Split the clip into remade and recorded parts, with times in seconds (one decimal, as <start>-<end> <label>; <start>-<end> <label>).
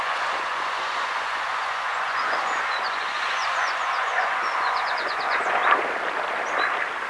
0.0-5.6 remade; 5.6-7.1 recorded